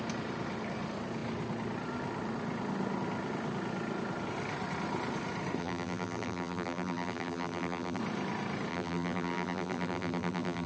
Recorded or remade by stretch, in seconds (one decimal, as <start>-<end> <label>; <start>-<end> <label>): 0.0-5.6 recorded; 5.6-8.0 remade; 8.0-8.7 recorded; 8.7-10.7 remade